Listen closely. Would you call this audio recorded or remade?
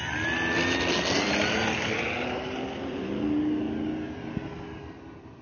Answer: recorded